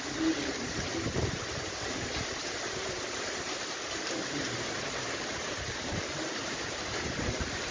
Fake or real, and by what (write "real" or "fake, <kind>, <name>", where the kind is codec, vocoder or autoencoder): fake, vocoder, BigVGAN v2